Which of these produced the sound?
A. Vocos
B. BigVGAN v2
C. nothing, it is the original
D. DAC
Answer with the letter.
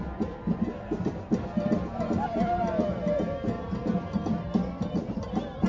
C